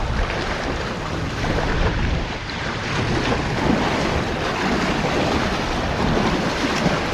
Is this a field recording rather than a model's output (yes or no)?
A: no